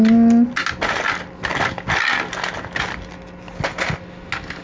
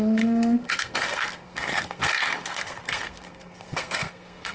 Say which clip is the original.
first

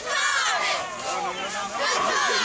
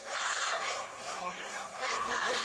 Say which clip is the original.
first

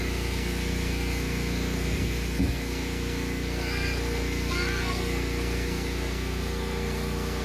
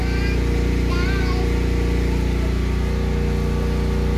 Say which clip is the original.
second